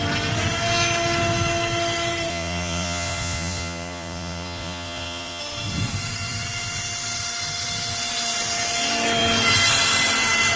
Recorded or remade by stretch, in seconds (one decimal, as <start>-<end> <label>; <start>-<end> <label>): 0.0-2.3 recorded; 2.3-5.4 remade; 5.4-10.6 recorded